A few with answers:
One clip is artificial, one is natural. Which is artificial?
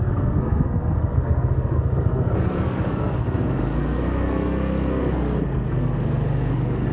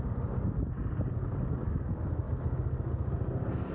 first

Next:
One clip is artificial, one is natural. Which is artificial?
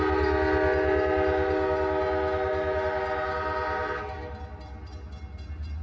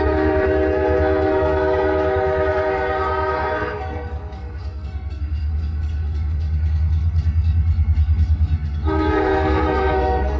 second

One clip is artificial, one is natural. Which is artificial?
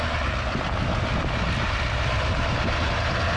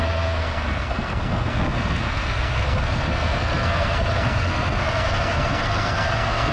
second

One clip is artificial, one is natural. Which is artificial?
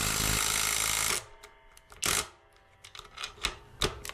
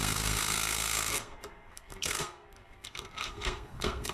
second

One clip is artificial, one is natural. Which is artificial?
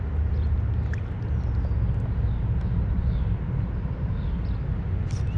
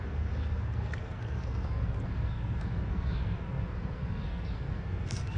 second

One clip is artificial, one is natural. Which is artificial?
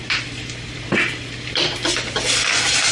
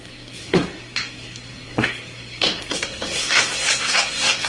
second